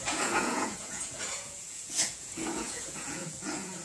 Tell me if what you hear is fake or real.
fake